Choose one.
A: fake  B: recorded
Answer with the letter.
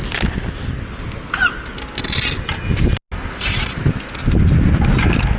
B